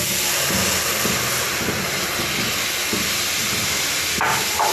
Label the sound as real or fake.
real